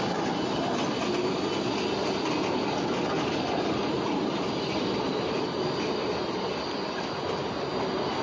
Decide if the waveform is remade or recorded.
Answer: recorded